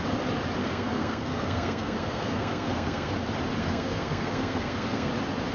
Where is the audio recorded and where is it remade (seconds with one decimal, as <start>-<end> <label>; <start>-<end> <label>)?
0.0-0.6 recorded; 0.6-3.1 remade; 3.1-3.6 recorded; 3.6-5.1 remade; 5.1-5.5 recorded